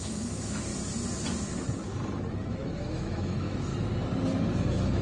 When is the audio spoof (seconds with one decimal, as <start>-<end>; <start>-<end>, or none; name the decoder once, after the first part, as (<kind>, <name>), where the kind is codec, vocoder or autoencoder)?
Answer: 0.0-0.7 (autoencoder, DAC-VAE); 2.5-3.7; 4.5-5.0